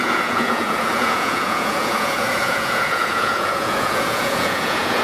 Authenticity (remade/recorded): remade